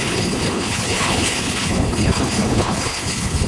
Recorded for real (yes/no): no